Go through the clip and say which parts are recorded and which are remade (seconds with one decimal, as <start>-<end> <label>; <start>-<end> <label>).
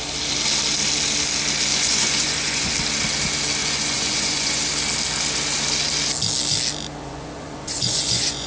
0.0-1.7 recorded; 1.7-2.7 remade; 2.7-3.6 recorded; 3.6-4.6 remade; 4.6-7.0 recorded; 7.0-8.5 remade